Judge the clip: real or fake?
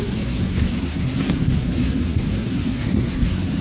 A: fake